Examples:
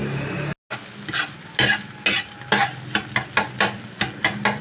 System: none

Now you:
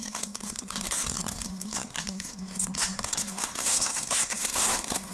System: codec, SNAC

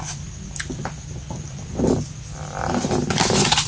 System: none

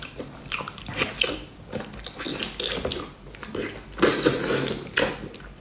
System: none